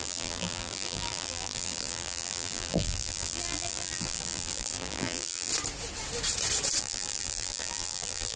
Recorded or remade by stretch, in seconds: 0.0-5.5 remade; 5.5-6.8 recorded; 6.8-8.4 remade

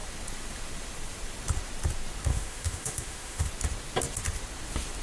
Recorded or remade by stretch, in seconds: 0.0-2.3 recorded; 2.3-3.5 remade; 3.5-5.0 recorded

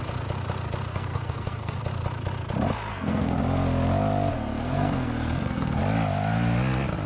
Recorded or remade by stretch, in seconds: 0.0-0.9 recorded; 0.9-1.8 remade; 1.8-2.9 recorded; 2.9-3.4 remade; 3.4-4.3 recorded; 4.3-5.8 remade; 5.8-7.1 recorded

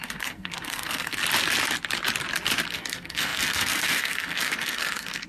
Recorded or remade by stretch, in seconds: 0.0-1.2 remade; 1.2-2.7 recorded; 2.7-5.3 remade

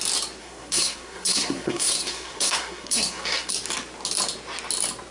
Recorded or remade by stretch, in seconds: 0.0-0.4 recorded; 0.4-3.5 remade; 3.5-5.1 recorded

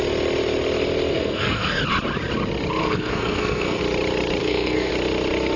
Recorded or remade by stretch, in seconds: 0.0-1.1 recorded; 1.1-1.8 remade; 1.8-2.8 recorded; 2.8-3.8 remade; 3.8-4.4 recorded; 4.4-4.9 remade; 4.9-5.6 recorded